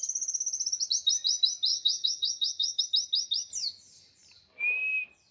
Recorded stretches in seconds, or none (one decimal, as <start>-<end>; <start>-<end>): 0.0-1.7; 2.8-5.3